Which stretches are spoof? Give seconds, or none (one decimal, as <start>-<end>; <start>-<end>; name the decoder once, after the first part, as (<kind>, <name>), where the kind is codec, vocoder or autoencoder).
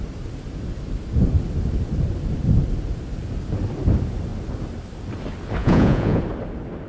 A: 5.6-6.2 (vocoder, Vocos)